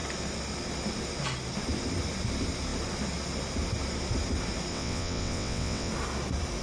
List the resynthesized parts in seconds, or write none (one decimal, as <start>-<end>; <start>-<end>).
4.7-5.9